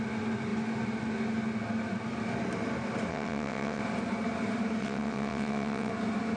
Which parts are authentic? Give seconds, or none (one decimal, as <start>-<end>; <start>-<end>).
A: 0.0-3.1; 3.8-4.8; 5.9-6.4